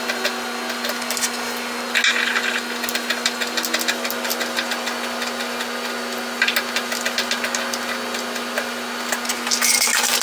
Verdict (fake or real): real